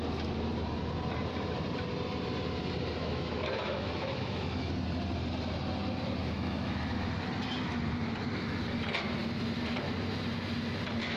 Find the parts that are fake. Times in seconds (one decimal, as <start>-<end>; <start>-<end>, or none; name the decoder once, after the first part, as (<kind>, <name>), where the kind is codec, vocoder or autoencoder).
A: 3.0-4.7 (autoencoder, DAC-VAE); 6.2-7.1